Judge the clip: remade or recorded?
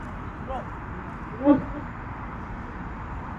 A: remade